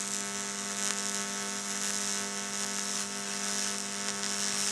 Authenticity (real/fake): real